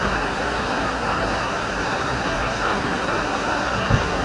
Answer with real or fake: fake